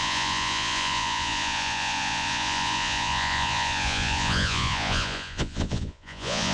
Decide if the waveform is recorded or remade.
remade